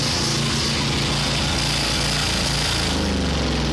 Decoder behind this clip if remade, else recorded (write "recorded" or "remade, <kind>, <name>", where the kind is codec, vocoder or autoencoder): recorded